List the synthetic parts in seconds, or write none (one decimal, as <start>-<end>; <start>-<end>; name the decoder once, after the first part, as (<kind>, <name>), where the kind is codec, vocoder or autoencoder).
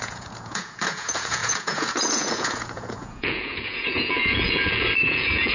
0.0-5.5 (vocoder, Vocos)